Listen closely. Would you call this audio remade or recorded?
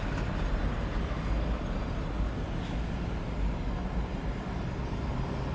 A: recorded